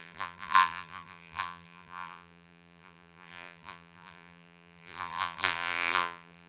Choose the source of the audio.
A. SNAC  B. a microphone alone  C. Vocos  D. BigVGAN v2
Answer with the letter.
D